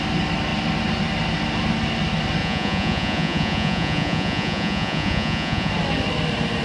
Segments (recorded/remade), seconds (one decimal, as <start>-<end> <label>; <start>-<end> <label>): 0.0-2.4 recorded; 2.4-5.7 remade; 5.7-6.6 recorded